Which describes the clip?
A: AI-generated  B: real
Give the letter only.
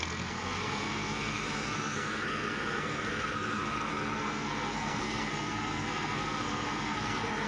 A